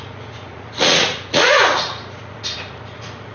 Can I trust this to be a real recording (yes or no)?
no